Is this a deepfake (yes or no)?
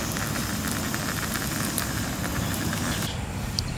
no